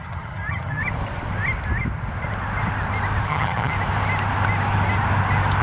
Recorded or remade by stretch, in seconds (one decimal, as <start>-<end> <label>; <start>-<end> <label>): 0.0-0.8 remade; 0.8-3.3 recorded; 3.3-3.7 remade; 3.7-5.6 recorded